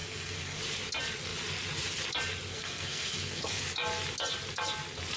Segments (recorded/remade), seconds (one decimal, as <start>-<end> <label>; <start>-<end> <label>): 0.0-0.6 remade; 0.6-2.5 recorded; 2.5-3.6 remade; 3.6-5.2 recorded